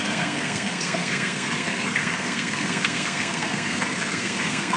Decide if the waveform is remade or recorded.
remade